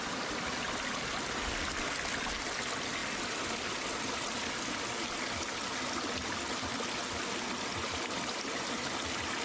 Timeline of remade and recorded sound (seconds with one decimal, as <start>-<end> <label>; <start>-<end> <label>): 0.0-9.4 recorded